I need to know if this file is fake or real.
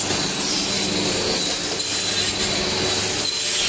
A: real